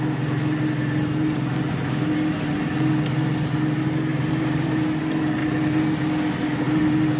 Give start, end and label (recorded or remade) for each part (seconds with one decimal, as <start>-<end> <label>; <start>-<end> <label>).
0.0-4.1 recorded; 4.1-5.0 remade; 5.0-7.2 recorded